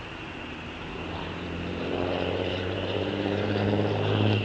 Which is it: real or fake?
fake